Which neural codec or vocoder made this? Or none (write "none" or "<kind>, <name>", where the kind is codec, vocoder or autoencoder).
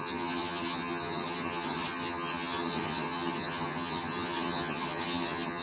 vocoder, HiFi-GAN